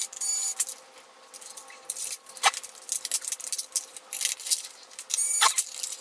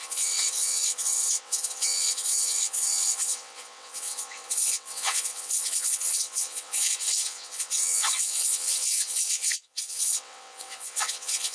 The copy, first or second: second